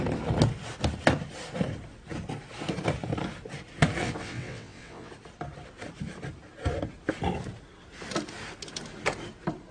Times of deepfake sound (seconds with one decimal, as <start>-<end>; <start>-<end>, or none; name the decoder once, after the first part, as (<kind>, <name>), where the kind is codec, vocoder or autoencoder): 4.0-5.1 (vocoder, WaveNeXt)